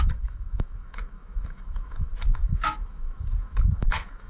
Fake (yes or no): yes